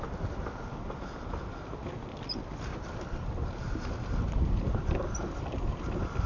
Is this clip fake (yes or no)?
no